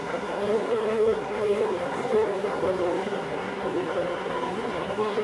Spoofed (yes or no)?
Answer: yes